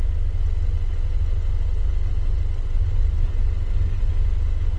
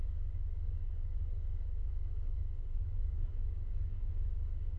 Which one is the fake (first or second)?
second